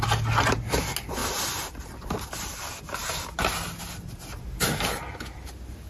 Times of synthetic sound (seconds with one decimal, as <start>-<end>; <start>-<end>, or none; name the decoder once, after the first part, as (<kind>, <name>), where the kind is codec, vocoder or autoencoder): none